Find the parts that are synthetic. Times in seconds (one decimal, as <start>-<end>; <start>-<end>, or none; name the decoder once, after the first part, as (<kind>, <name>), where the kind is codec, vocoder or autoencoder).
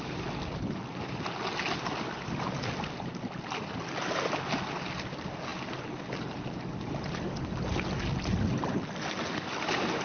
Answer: none